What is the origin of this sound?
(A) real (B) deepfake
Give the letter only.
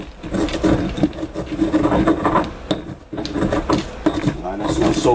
A